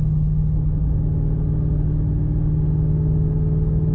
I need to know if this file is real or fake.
real